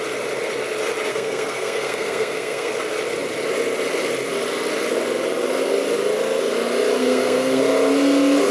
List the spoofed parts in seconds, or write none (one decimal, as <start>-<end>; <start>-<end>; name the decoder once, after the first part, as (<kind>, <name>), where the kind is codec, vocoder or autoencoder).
1.1-2.7 (codec, SNAC); 7.0-7.6

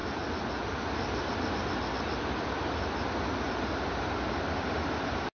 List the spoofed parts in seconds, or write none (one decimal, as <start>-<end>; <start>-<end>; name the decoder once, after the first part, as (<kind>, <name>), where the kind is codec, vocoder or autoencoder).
none